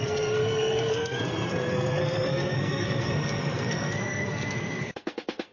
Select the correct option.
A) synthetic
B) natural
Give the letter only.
A